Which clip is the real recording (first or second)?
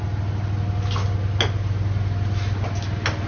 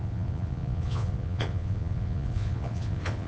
first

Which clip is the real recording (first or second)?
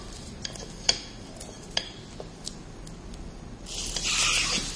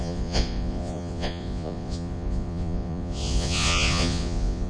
first